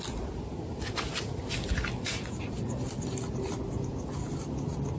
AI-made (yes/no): no